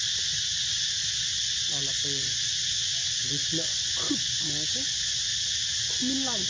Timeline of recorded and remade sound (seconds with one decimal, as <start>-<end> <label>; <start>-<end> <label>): 0.0-1.3 recorded; 1.3-5.2 remade; 5.2-6.5 recorded